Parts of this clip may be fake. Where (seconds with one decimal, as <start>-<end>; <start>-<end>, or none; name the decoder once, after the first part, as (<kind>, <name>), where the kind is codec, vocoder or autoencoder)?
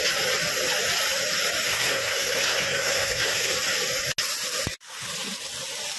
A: 1.7-3.5 (codec, SNAC)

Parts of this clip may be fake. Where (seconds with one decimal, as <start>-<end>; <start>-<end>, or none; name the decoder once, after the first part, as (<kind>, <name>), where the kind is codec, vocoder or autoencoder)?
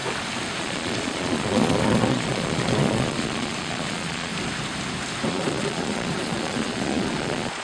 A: 0.6-4.3 (vocoder, Vocos); 5.3-7.6